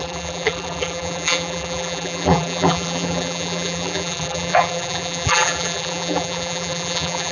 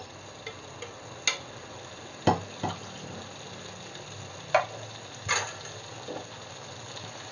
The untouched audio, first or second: second